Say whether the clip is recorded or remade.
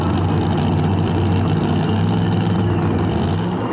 recorded